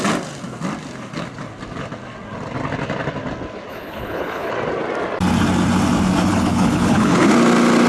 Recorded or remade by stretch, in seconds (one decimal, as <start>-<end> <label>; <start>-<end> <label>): 0.0-3.7 recorded; 3.7-4.5 remade; 4.5-6.3 recorded; 6.3-7.3 remade; 7.3-7.9 recorded